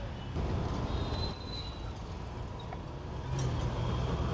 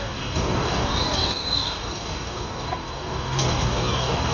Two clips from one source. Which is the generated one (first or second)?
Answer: second